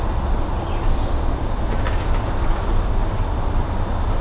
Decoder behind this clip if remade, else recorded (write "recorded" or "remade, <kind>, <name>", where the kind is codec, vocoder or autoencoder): recorded